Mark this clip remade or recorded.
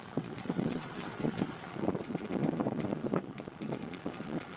remade